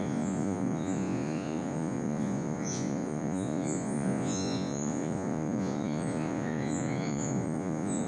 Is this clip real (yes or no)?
no